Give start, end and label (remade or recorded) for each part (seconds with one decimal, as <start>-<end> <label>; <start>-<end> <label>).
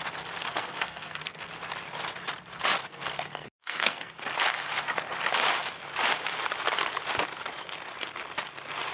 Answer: 0.0-0.4 recorded; 0.4-1.5 remade; 1.5-2.8 recorded; 2.8-4.1 remade; 4.1-8.9 recorded